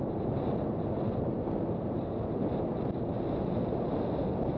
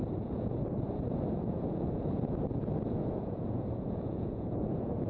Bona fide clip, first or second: first